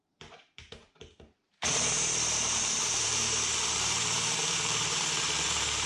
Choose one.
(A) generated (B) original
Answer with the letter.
A